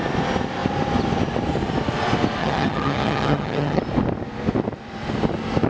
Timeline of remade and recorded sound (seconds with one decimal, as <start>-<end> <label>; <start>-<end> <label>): 0.0-2.4 recorded; 2.4-3.8 remade; 3.8-5.7 recorded